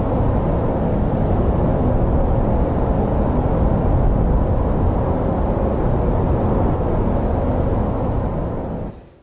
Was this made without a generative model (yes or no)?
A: yes